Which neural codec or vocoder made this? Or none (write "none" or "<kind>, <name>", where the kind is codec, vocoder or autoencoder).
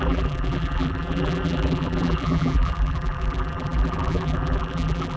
vocoder, BigVGAN v2